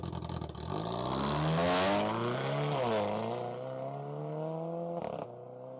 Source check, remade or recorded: recorded